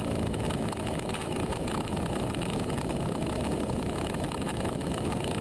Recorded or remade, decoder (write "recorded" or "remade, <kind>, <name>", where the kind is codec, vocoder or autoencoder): remade, autoencoder, DAC-VAE